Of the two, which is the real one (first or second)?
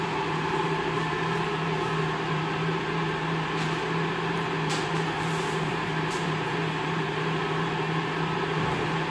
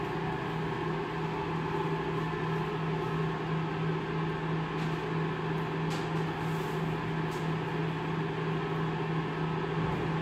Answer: second